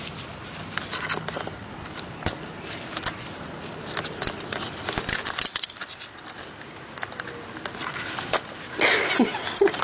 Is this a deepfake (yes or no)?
no